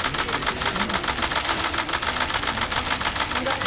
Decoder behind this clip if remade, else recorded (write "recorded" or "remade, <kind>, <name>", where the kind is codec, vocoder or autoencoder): recorded